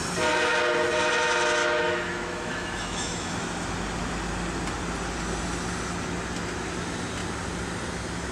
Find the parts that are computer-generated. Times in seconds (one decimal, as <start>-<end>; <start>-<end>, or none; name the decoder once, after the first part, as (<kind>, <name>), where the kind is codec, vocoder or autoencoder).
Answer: 1.6-3.3 (autoencoder, DAC-VAE)